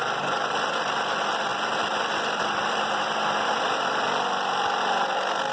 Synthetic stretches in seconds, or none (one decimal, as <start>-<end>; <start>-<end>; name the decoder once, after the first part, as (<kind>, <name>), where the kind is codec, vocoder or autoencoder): none